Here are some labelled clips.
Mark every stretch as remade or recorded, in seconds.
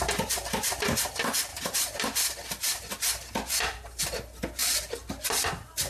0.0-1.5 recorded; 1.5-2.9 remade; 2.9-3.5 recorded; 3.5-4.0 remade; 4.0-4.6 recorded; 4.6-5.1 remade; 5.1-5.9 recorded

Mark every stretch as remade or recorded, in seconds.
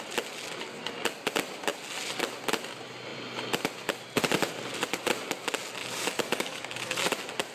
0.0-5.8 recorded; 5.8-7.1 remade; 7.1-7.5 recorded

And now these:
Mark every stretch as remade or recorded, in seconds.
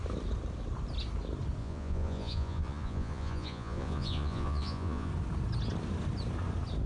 0.0-1.6 recorded; 1.6-5.1 remade; 5.1-6.9 recorded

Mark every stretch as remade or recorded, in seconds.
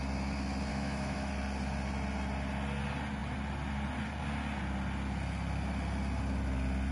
0.0-0.7 recorded; 0.7-1.3 remade; 1.3-6.9 recorded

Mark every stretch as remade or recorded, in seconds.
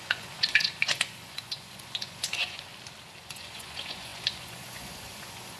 0.0-2.7 remade; 2.7-3.2 recorded; 3.2-5.6 remade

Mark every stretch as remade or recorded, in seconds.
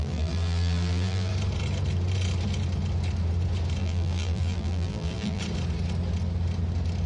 0.0-1.3 remade; 1.3-3.8 recorded; 3.8-5.4 remade; 5.4-7.1 recorded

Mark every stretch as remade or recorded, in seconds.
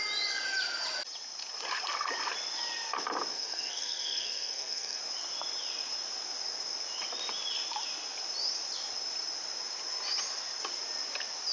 0.0-3.3 recorded; 3.3-5.0 remade; 5.0-11.5 recorded